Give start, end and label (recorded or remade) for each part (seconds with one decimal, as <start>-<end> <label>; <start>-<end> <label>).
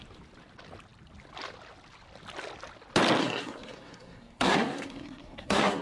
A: 0.0-3.2 recorded; 3.2-5.8 remade